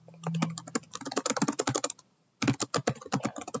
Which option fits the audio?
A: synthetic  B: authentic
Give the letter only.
B